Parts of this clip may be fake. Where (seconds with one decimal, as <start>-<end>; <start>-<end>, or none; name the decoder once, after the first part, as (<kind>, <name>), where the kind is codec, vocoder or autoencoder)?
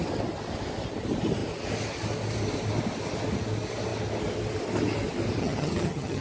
5.4-6.2 (vocoder, HiFi-GAN)